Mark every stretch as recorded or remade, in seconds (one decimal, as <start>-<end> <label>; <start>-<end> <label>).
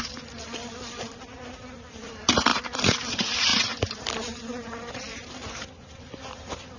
0.0-6.8 recorded